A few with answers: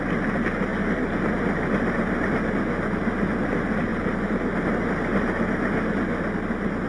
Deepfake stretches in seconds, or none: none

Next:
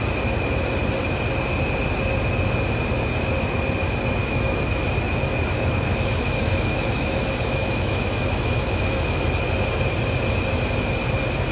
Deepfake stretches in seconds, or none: 4.2-9.3 (autoencoder, DAC-VAE)

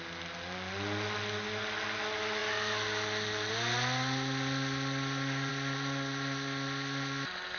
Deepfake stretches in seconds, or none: none

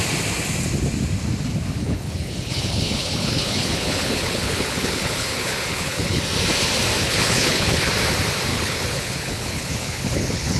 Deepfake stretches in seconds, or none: 1.8-6.2 (codec, HILCodec); 7.0-7.9; 8.5-10.6